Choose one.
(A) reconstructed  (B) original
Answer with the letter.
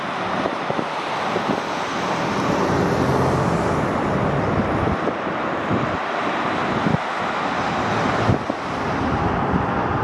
B